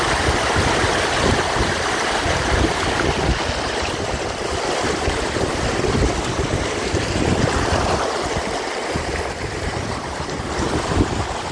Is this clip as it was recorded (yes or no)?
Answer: yes